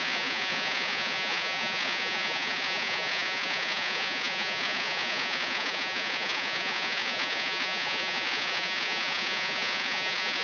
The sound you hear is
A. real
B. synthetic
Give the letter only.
B